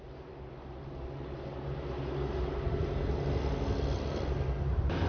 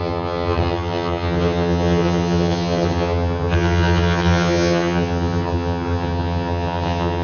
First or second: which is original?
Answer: first